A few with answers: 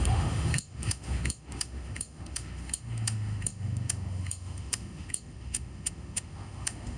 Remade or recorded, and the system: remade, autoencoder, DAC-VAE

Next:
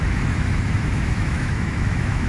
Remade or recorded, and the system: remade, autoencoder, DAC-VAE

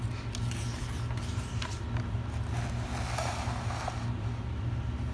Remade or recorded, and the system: recorded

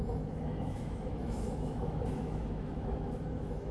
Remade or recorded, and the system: remade, autoencoder, DAC-VAE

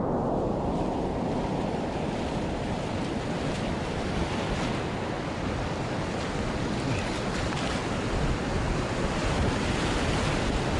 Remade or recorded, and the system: recorded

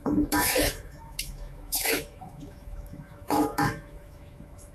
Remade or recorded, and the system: remade, autoencoder, DAC-VAE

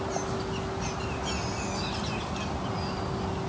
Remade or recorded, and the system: recorded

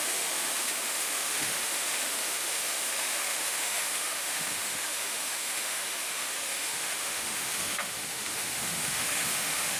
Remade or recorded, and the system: remade, autoencoder, DAC-VAE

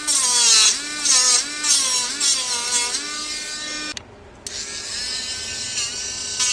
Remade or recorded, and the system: recorded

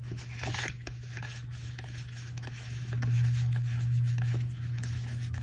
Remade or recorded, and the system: remade, autoencoder, DAC-VAE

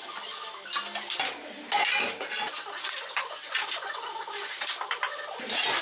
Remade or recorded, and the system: recorded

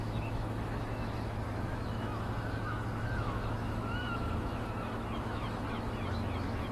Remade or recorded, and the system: remade, autoencoder, DAC-VAE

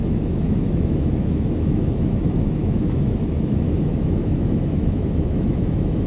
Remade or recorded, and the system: remade, autoencoder, DAC-VAE